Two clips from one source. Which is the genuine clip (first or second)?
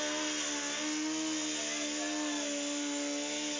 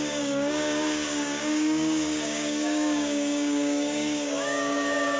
first